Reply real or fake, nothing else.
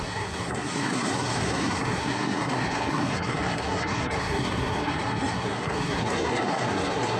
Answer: fake